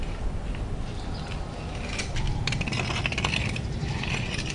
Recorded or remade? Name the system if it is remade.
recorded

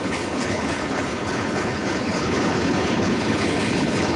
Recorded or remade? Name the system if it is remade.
remade, codec, HILCodec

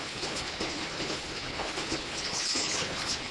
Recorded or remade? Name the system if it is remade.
remade, codec, HILCodec